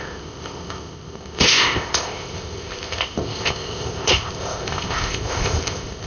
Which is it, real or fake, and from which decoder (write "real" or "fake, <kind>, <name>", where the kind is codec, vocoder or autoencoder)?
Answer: fake, codec, ZipCodec